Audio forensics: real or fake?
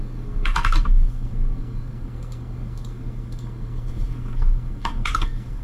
fake